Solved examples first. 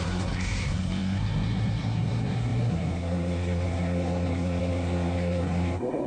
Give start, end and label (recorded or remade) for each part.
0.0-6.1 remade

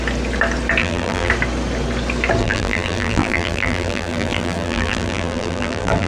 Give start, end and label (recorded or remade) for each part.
0.0-0.8 recorded; 0.8-1.3 remade; 1.3-2.4 recorded; 2.4-6.1 remade

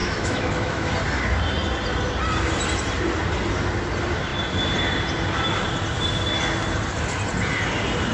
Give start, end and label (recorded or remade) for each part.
0.0-0.9 remade; 0.9-8.1 recorded

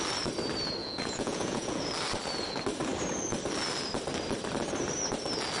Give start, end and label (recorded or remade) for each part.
0.0-0.8 recorded; 0.8-1.8 remade; 1.8-5.6 recorded

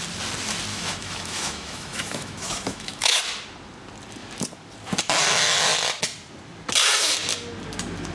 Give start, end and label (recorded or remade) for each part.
0.0-0.7 recorded; 0.7-3.2 remade; 3.2-8.1 recorded

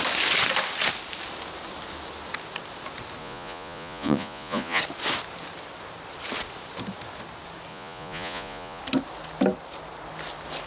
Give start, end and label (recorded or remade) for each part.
0.0-3.2 recorded; 3.2-4.8 remade; 4.8-7.7 recorded; 7.7-8.8 remade; 8.8-10.7 recorded